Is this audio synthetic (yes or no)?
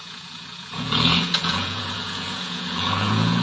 yes